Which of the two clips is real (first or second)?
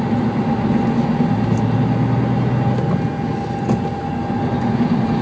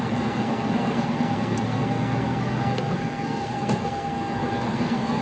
first